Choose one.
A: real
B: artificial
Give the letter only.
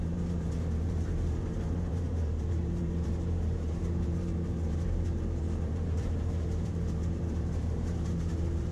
B